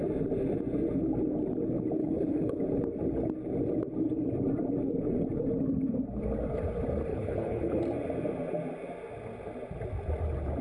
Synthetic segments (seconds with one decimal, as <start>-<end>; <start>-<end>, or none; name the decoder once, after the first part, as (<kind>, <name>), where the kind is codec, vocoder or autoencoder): 2.0-2.6 (codec, HILCodec); 7.1-7.8